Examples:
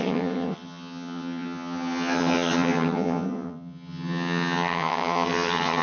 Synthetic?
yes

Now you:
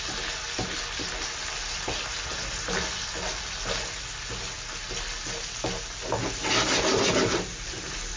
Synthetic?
no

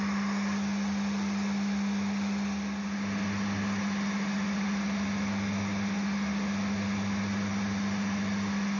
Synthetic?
no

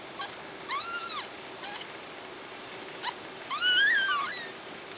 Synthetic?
no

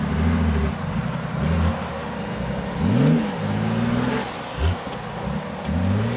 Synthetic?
no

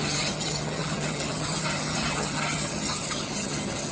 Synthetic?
yes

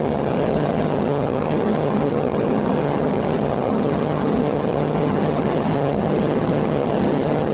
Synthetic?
yes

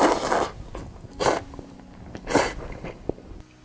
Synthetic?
no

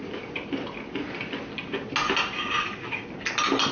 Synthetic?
no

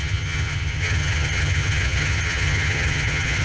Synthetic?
yes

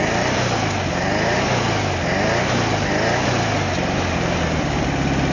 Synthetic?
no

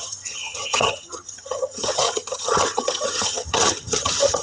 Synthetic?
yes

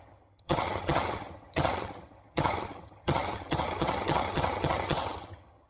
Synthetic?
yes